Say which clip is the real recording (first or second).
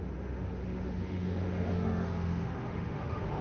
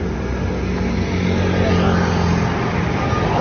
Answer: second